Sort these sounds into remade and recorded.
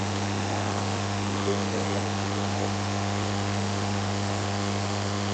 remade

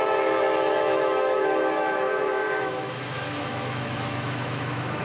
remade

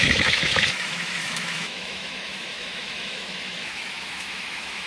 remade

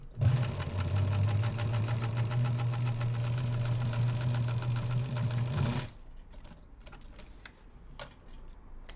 recorded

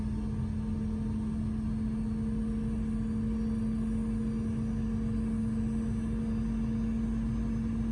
recorded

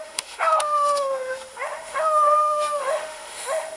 remade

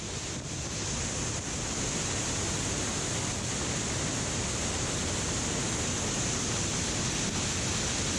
recorded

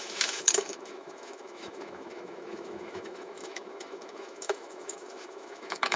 remade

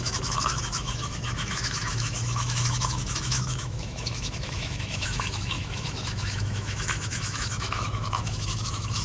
remade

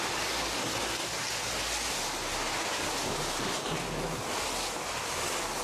recorded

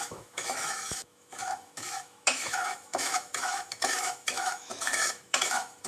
remade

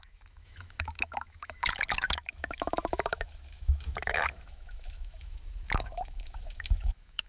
remade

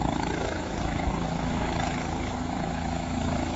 remade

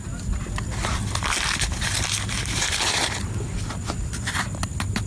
recorded